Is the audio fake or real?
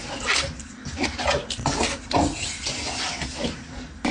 real